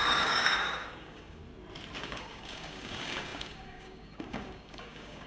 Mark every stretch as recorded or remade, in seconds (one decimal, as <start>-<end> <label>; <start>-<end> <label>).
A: 0.0-1.4 remade; 1.4-2.0 recorded; 2.0-5.3 remade